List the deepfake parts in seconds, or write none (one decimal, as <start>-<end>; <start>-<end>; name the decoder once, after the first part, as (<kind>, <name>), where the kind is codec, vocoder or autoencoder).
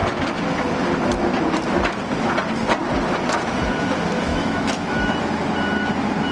4.3-5.2 (autoencoder, DAC-VAE)